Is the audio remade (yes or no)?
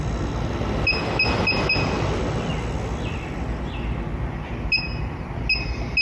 no